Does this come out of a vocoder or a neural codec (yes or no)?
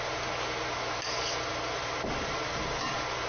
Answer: no